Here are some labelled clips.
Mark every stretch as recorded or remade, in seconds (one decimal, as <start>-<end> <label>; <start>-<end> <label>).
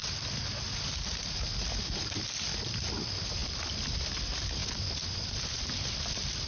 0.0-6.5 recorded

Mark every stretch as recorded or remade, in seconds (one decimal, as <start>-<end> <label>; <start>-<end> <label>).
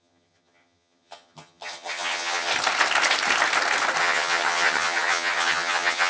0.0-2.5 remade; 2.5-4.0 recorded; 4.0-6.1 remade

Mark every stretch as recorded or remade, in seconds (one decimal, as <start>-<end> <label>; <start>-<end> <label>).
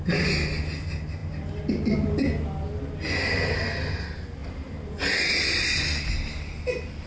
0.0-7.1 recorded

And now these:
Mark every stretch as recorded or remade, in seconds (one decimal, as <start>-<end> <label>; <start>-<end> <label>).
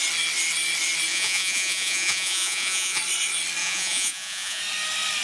0.0-1.1 recorded; 1.1-3.0 remade; 3.0-3.6 recorded; 3.6-4.6 remade; 4.6-5.2 recorded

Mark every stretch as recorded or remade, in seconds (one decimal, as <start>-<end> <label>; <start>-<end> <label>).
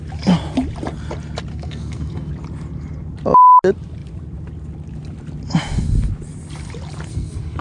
0.0-1.5 recorded; 1.5-2.3 remade; 2.3-7.1 recorded; 7.1-7.6 remade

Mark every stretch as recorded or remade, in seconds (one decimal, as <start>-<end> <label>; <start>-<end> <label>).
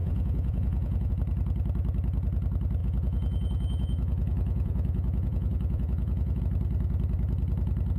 0.0-1.1 remade; 1.1-2.8 recorded; 2.8-6.4 remade; 6.4-8.0 recorded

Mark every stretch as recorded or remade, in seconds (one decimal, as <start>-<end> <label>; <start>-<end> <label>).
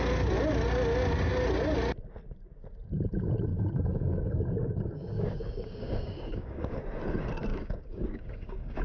0.0-3.5 recorded; 3.5-6.8 remade; 6.8-7.5 recorded; 7.5-8.8 remade